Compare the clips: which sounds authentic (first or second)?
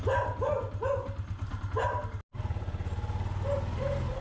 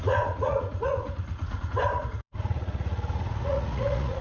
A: first